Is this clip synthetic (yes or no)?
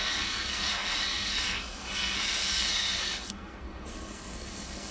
yes